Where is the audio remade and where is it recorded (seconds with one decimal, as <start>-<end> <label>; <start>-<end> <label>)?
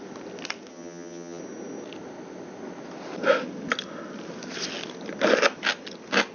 0.0-0.7 recorded; 0.7-1.4 remade; 1.4-6.3 recorded